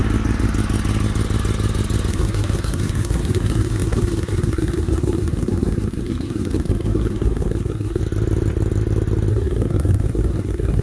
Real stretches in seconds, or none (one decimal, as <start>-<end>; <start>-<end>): 0.0-2.1; 8.0-9.3